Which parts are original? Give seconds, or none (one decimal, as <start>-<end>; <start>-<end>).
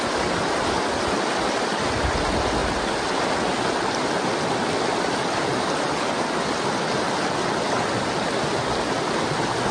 0.0-9.7